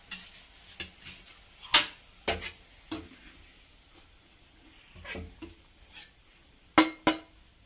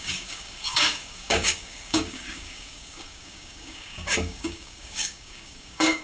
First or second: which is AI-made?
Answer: second